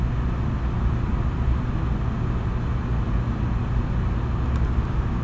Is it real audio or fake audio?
real